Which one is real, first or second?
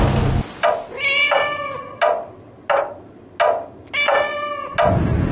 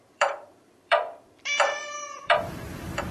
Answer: first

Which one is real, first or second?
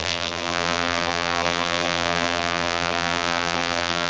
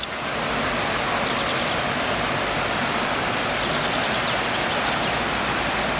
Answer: second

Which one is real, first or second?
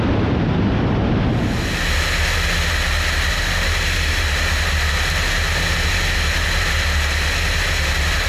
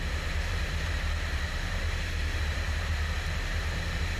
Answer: first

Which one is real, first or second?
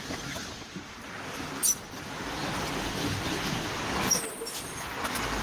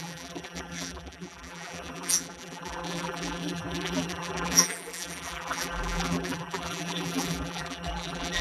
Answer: first